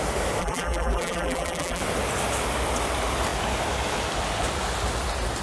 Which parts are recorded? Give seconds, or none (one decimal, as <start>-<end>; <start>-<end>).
0.0-0.4; 1.8-5.4